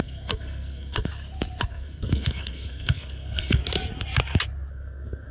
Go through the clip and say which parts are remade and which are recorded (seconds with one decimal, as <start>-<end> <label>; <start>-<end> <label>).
0.0-1.1 remade; 1.1-1.7 recorded; 1.7-3.6 remade; 3.6-4.7 recorded; 4.7-5.3 remade